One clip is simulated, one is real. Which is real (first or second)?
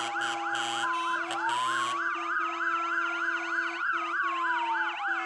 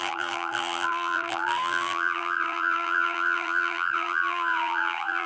first